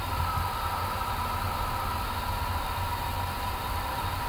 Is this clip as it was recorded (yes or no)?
yes